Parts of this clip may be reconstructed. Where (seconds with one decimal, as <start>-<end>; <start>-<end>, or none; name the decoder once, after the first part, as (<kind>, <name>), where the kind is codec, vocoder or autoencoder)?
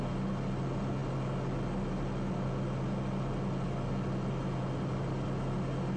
none